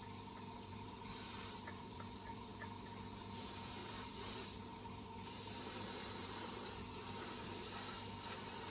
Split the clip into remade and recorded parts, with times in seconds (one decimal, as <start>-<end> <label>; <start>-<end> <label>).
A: 0.0-2.5 remade; 2.5-3.4 recorded; 3.4-8.7 remade